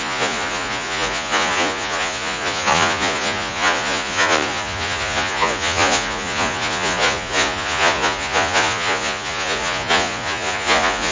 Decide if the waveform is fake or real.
fake